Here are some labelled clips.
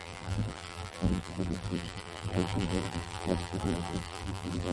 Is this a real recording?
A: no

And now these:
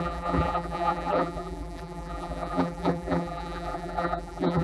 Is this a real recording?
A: no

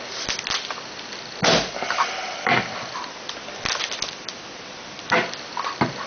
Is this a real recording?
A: yes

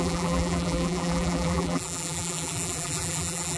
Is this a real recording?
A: no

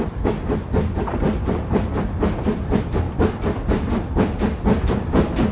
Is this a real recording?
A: no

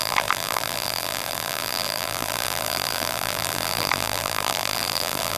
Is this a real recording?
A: no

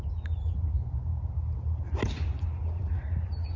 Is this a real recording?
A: yes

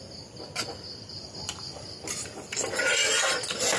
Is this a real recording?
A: yes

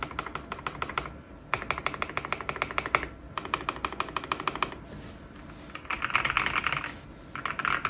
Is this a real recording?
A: yes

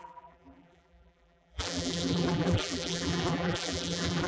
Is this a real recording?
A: no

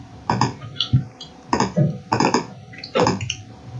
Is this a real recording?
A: no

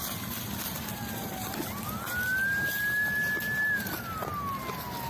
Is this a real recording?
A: yes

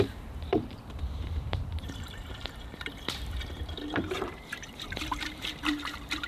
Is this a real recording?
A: no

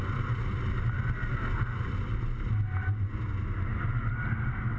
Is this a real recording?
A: yes